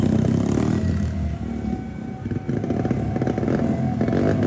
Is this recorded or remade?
recorded